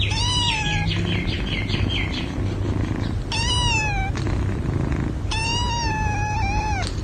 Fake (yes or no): no